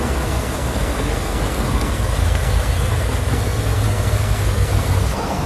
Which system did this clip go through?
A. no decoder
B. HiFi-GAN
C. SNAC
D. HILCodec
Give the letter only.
C